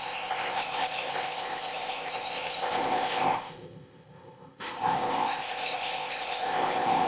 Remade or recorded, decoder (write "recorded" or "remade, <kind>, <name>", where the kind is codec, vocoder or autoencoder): remade, codec, ZipCodec